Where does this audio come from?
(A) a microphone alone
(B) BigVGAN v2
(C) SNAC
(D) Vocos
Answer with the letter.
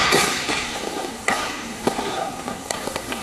C